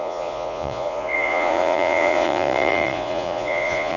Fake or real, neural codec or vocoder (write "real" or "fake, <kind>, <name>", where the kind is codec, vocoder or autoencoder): fake, vocoder, Vocos